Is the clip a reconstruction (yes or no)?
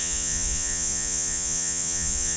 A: yes